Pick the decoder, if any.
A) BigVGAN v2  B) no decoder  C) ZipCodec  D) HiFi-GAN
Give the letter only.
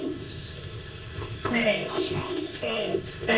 C